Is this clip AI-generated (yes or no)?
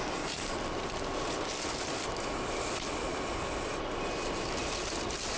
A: no